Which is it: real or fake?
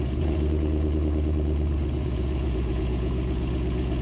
fake